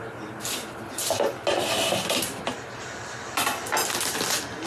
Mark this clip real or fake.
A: real